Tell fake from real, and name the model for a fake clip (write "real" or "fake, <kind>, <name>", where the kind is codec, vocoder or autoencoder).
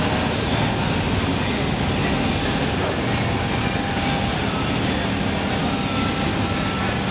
real